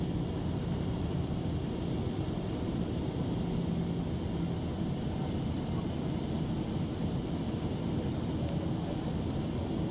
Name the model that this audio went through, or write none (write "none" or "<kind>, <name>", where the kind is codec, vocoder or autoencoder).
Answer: none